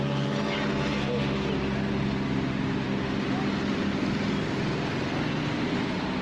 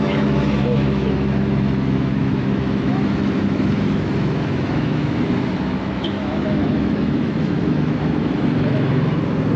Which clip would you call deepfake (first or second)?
second